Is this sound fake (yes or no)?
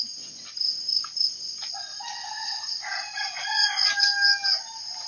no